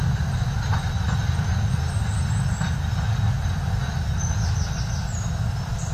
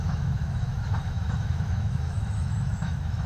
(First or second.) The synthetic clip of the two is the second